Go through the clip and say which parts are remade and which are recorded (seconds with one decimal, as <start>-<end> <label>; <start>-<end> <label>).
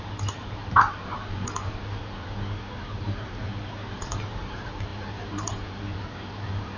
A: 0.0-2.0 remade; 2.0-3.9 recorded; 3.9-6.8 remade